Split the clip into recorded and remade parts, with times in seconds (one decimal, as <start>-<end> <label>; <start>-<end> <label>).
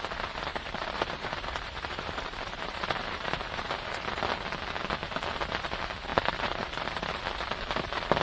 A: 0.0-0.5 recorded; 0.5-4.2 remade; 4.2-6.1 recorded; 6.1-7.2 remade; 7.2-8.2 recorded